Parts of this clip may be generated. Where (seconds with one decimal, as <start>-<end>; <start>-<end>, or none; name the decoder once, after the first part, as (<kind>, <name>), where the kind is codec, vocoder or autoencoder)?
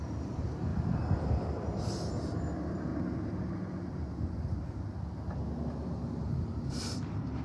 0.0-2.9 (vocoder, BigVGAN v2); 6.7-7.4